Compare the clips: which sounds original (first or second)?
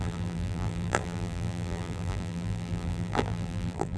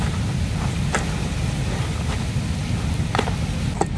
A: second